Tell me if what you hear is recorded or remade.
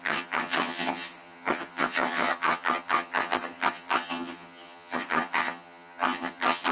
remade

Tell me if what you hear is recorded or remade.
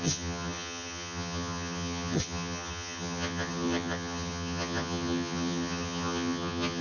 remade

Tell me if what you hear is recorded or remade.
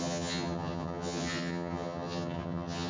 remade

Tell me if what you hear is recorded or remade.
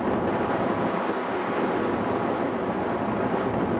recorded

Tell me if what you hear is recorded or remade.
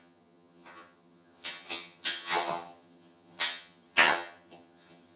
remade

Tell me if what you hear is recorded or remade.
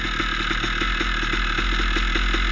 recorded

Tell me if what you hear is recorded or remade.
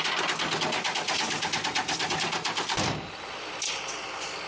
recorded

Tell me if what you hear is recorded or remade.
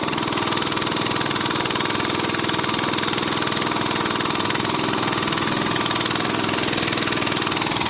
recorded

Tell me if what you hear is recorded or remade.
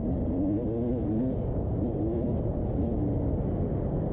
recorded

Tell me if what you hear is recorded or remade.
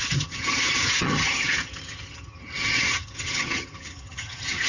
remade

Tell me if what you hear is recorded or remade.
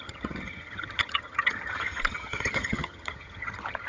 remade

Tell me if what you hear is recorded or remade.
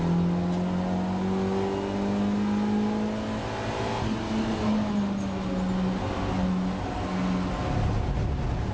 recorded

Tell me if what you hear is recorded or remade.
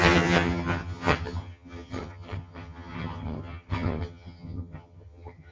remade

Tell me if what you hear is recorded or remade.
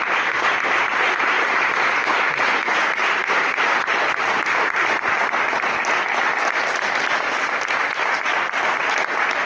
recorded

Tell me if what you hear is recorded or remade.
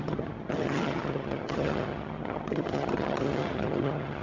remade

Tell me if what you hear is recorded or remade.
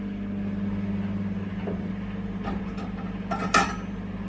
recorded